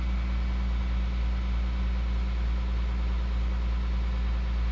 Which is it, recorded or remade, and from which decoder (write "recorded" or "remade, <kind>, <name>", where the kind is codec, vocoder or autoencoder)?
recorded